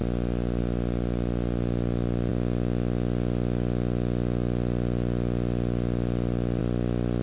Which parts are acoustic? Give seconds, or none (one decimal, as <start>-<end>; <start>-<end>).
0.0-7.2